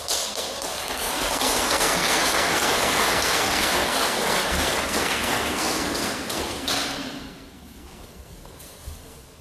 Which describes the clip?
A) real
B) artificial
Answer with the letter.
B